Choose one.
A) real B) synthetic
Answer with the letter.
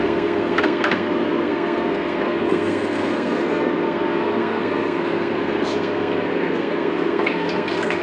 B